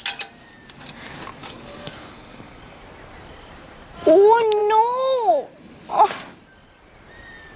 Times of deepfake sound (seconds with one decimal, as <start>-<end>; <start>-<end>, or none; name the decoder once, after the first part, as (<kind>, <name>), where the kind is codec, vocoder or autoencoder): 1.4-2.8 (codec, DAC)